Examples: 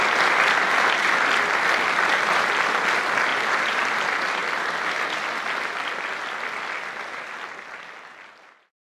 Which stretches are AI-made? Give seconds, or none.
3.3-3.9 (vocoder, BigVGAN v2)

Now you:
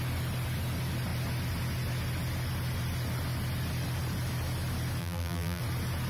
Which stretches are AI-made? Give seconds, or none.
5.0-5.6 (vocoder, BigVGAN v2)

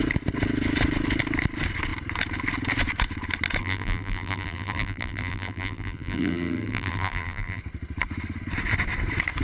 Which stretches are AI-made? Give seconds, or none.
3.6-7.6 (vocoder, BigVGAN v2)

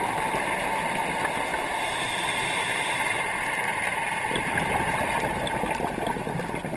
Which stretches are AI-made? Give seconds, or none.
1.5-5.6 (vocoder, BigVGAN v2)

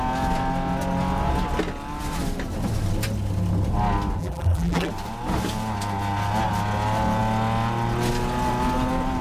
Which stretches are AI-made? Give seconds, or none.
4.2-4.9 (vocoder, BigVGAN v2)